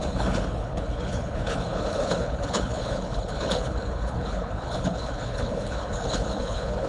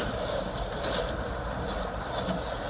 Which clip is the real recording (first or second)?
second